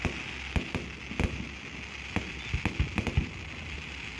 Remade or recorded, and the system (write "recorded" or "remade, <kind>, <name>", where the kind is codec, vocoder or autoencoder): recorded